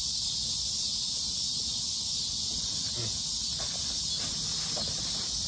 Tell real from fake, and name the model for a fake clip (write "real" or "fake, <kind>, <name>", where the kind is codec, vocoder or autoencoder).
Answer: real